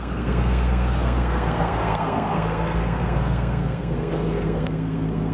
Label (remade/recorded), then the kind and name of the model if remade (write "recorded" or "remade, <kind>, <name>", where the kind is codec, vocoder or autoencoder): remade, codec, SNAC